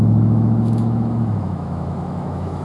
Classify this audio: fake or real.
fake